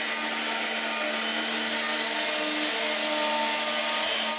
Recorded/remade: recorded